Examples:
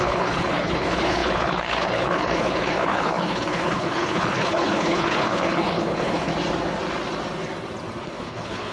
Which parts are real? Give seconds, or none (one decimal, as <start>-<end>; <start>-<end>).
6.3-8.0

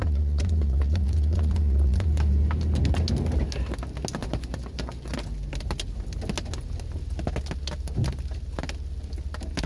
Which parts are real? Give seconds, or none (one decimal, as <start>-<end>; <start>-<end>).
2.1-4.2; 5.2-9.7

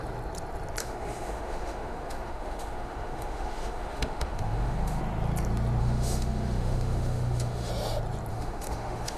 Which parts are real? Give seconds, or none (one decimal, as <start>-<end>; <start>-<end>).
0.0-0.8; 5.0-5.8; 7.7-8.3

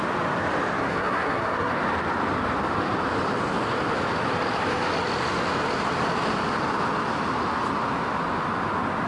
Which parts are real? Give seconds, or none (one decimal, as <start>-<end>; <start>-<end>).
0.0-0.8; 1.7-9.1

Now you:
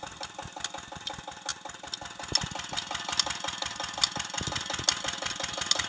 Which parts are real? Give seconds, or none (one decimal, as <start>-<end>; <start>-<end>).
0.0-5.9

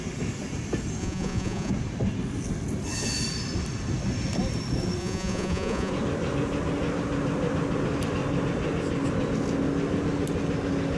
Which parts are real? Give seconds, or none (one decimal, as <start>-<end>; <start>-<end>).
0.0-1.0; 1.7-5.0; 5.9-11.0